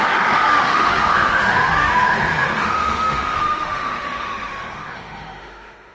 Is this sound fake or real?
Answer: fake